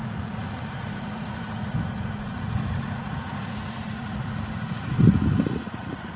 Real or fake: fake